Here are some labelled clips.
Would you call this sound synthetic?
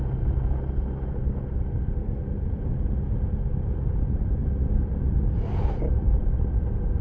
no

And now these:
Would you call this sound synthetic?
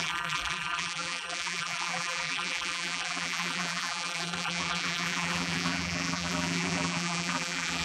yes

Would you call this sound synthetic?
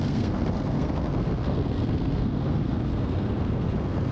yes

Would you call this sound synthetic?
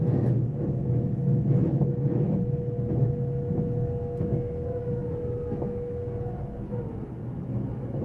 yes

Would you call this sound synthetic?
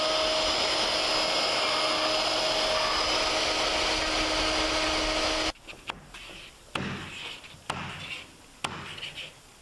no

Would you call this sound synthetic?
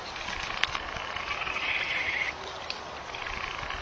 no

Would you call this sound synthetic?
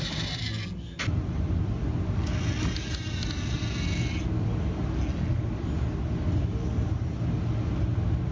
no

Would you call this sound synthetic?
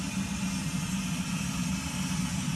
no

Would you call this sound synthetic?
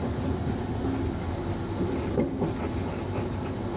no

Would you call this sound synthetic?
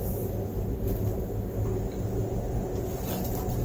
no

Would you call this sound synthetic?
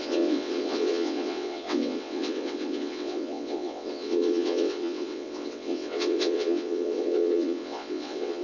yes